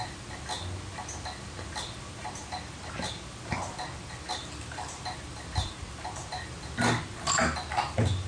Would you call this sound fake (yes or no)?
no